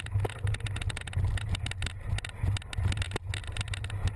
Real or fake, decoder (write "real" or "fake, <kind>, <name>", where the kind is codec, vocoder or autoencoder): real